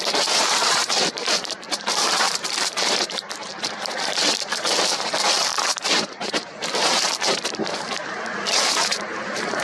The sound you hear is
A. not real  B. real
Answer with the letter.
A